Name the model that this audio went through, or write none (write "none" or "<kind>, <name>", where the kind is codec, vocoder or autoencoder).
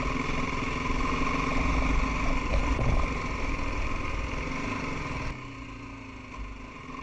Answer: none